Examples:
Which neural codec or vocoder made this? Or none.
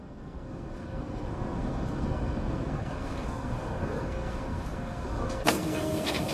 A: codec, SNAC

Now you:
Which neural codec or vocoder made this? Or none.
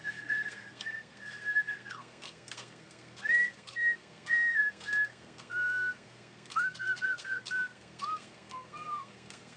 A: codec, SNAC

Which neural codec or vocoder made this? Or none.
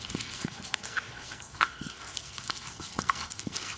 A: codec, SNAC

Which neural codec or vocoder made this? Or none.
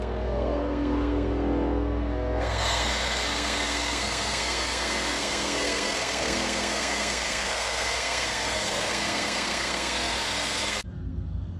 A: codec, SNAC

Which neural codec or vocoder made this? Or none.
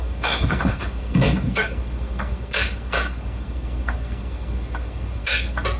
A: codec, SNAC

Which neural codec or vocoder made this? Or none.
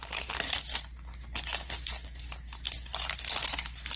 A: none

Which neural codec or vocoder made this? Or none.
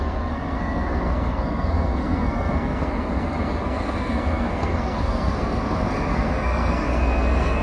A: codec, SNAC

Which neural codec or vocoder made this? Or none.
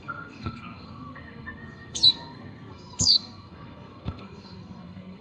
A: codec, SNAC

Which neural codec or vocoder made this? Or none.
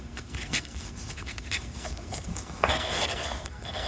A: codec, SNAC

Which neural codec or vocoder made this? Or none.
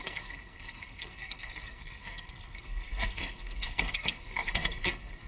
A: codec, SNAC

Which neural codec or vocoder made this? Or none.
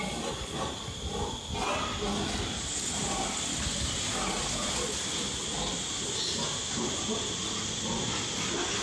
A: none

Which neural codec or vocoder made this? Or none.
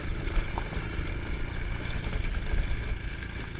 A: none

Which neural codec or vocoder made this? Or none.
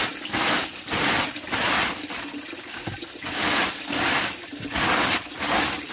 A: none